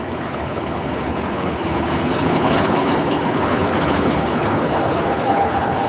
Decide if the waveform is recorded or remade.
remade